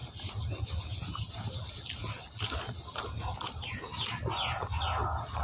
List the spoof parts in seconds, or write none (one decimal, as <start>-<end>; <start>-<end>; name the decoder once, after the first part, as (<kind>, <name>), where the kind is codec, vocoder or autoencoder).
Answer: none